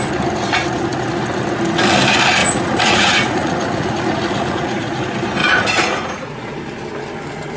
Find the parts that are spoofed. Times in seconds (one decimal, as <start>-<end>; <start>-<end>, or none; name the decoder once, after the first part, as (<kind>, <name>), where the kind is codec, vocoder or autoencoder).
2.4-5.0 (vocoder, Vocos); 5.4-6.5